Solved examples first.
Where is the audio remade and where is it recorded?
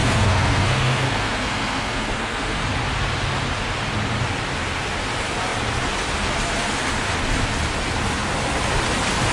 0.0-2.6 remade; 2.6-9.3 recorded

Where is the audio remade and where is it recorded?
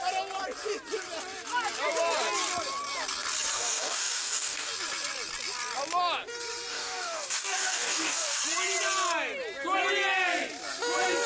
0.0-3.5 recorded; 3.5-4.7 remade; 4.7-6.7 recorded; 6.7-8.4 remade; 8.4-11.3 recorded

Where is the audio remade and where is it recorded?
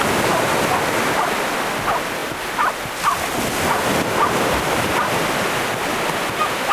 0.0-6.7 recorded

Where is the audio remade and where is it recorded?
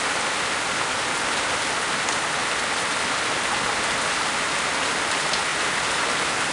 0.0-6.5 recorded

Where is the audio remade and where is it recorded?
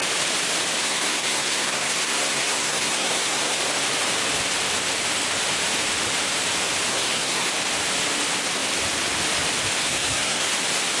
0.0-0.8 recorded; 0.8-3.6 remade; 3.6-6.9 recorded; 6.9-7.5 remade; 7.5-9.8 recorded; 9.8-10.5 remade; 10.5-11.0 recorded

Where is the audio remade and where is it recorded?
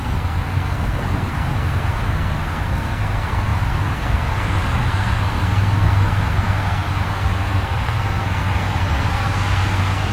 0.0-10.1 remade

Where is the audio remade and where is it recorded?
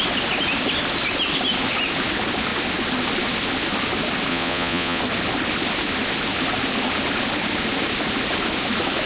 0.0-4.3 recorded; 4.3-5.0 remade; 5.0-9.1 recorded